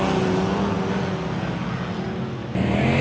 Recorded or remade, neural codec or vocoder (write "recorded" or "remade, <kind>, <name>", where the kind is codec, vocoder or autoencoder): recorded